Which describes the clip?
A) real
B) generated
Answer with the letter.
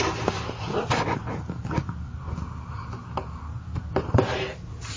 A